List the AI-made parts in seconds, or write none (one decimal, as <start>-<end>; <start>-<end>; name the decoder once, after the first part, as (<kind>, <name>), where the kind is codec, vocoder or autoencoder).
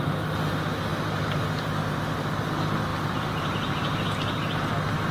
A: none